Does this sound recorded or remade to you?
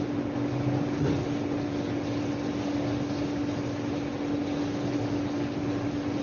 recorded